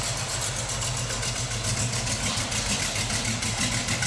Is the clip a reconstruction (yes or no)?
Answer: no